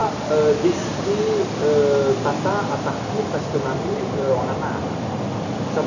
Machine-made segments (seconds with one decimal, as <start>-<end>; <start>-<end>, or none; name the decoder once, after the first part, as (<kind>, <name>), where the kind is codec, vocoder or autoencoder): 3.5-4.8 (vocoder, BigVGAN v2)